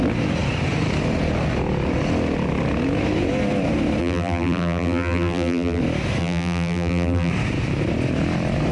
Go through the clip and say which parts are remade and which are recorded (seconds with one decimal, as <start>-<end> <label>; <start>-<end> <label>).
0.0-4.0 recorded; 4.0-5.8 remade; 5.8-6.2 recorded; 6.2-7.3 remade; 7.3-8.7 recorded